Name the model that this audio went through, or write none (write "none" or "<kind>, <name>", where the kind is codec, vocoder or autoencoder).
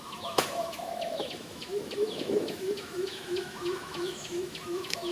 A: autoencoder, DAC-VAE